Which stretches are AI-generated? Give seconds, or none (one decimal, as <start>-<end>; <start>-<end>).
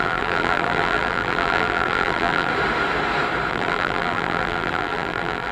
0.0-2.5; 3.5-5.5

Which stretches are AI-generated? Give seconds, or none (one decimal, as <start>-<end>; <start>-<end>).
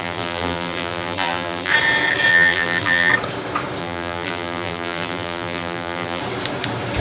0.0-1.7; 2.3-3.1; 3.8-6.2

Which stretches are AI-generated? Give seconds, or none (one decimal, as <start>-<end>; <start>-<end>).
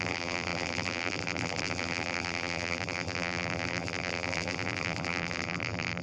0.0-6.0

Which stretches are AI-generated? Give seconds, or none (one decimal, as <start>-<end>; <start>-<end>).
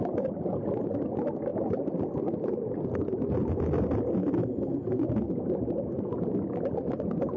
none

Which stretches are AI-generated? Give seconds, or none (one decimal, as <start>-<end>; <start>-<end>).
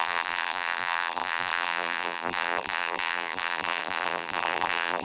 0.0-5.0